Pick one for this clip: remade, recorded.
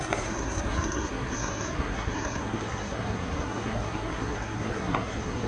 remade